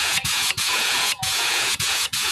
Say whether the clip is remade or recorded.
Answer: remade